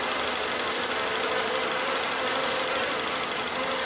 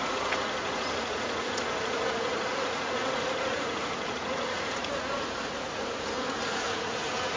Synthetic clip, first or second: second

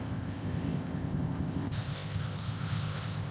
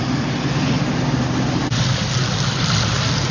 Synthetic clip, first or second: first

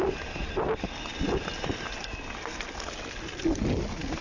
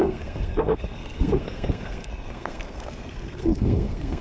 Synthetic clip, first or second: second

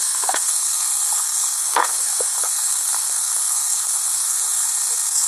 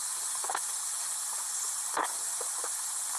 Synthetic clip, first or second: first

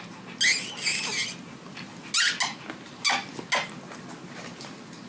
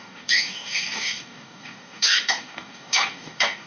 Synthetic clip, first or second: second